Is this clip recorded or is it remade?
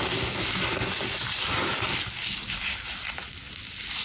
recorded